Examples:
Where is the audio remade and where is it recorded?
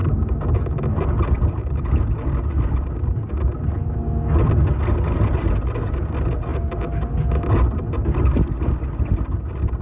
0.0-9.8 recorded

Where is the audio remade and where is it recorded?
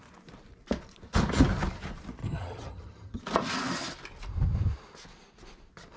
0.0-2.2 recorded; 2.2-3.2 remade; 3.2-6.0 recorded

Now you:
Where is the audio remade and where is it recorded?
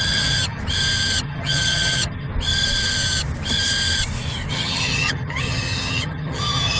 0.0-0.6 remade; 0.6-1.2 recorded; 1.2-2.3 remade; 2.3-4.5 recorded; 4.5-6.8 remade